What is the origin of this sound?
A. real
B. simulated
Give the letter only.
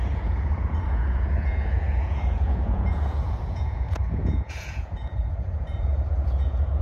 B